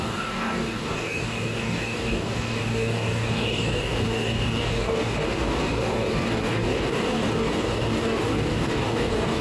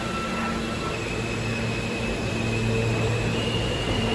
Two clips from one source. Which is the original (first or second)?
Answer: second